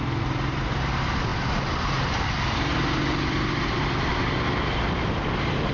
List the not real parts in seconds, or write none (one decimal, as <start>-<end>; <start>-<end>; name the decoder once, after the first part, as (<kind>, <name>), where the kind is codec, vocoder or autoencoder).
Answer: none